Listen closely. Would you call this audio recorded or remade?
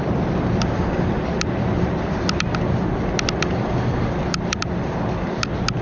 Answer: recorded